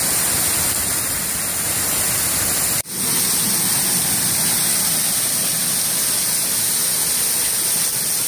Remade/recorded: recorded